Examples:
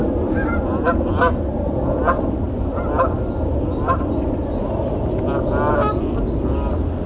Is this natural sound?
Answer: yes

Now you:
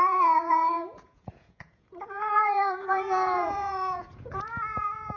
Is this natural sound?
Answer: no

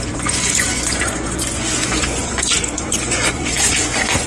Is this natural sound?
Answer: no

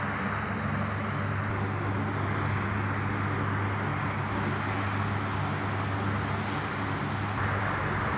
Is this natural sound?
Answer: yes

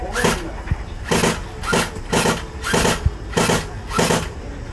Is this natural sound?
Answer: yes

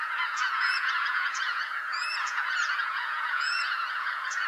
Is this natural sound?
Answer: no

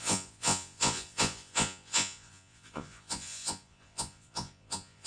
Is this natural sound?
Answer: no